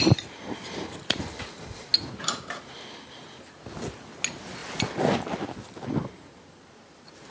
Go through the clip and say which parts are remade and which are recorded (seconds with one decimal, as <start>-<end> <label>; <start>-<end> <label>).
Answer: 0.0-7.3 recorded